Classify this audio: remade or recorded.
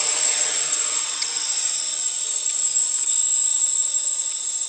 remade